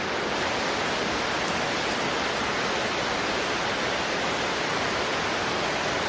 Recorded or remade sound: recorded